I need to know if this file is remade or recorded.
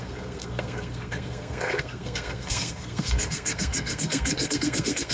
remade